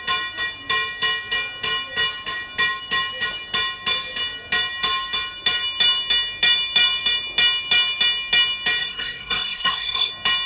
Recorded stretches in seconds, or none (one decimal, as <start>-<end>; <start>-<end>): 0.0-8.8; 10.1-10.5